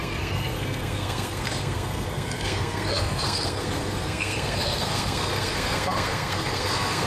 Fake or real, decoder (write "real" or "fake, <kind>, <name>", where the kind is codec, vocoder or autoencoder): fake, codec, SNAC